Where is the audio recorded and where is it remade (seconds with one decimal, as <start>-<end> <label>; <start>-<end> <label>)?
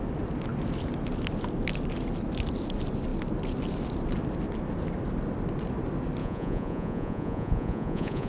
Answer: 0.0-6.2 recorded; 6.2-8.3 remade